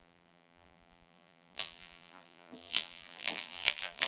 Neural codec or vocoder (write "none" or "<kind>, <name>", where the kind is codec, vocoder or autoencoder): vocoder, BigVGAN v2